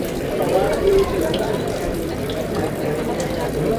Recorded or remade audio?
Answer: remade